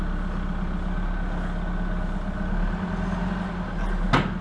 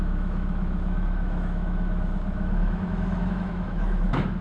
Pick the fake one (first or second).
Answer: second